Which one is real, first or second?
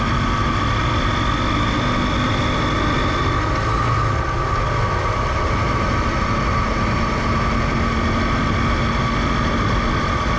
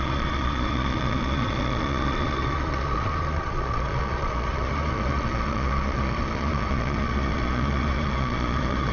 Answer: first